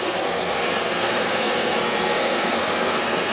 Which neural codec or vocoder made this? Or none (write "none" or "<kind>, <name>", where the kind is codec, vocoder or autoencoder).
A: codec, SNAC